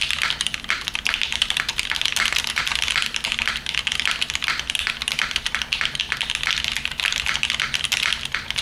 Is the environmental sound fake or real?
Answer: real